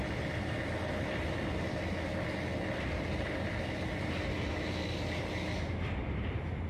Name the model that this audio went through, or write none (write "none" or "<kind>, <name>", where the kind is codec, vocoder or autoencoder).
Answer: none